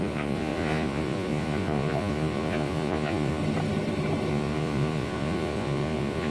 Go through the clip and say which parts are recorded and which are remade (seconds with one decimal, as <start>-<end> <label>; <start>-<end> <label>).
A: 0.0-3.4 remade; 3.4-4.3 recorded; 4.3-6.3 remade